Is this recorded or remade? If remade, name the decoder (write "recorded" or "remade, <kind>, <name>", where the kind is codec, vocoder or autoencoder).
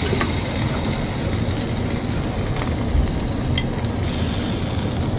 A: recorded